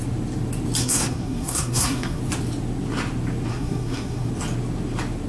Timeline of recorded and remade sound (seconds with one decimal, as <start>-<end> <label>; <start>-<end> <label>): 0.0-0.8 recorded; 0.8-2.2 remade; 2.2-3.5 recorded; 3.5-4.3 remade; 4.3-5.3 recorded